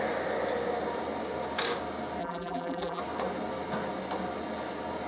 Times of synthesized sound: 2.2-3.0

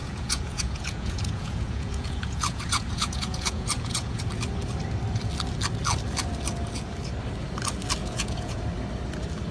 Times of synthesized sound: 0.0-4.2; 8.0-8.6